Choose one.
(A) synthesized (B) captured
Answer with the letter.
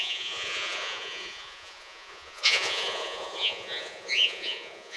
A